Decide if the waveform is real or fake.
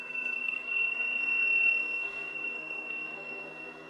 fake